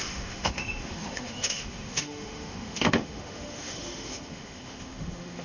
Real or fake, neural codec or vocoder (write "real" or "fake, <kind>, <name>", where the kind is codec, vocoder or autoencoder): fake, autoencoder, DAC-VAE